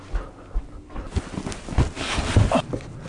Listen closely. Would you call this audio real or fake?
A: real